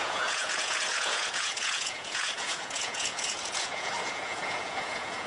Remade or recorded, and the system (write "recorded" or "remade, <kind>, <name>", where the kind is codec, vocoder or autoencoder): remade, vocoder, Vocos